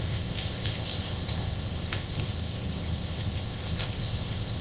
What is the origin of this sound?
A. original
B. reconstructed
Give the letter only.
B